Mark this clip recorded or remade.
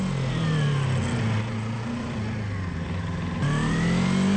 recorded